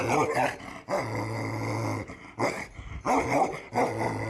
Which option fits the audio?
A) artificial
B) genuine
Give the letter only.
B